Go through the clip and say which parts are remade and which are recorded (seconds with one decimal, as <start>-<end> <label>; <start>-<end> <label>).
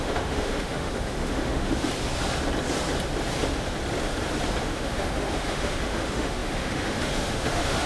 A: 0.0-1.9 remade; 1.9-4.6 recorded; 4.6-7.9 remade